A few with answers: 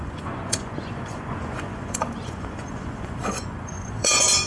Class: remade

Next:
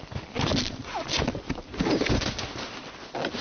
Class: recorded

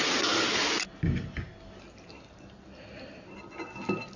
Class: recorded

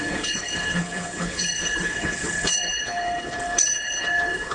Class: remade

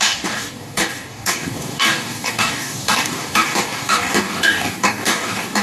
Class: remade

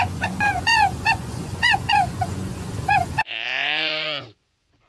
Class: remade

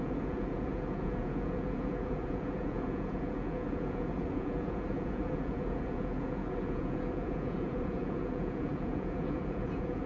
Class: remade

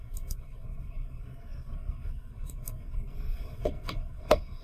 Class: remade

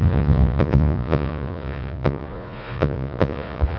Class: remade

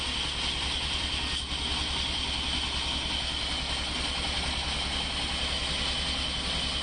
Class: recorded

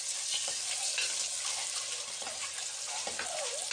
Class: recorded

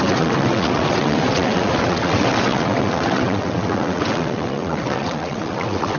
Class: remade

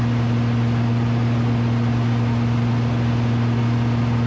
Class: recorded